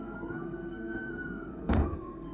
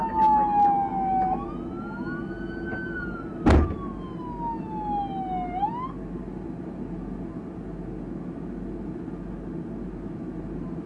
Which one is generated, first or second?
first